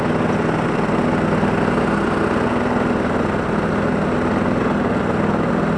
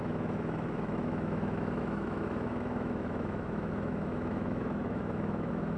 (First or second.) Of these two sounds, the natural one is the first